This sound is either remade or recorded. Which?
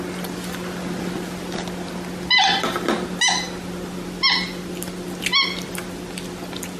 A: recorded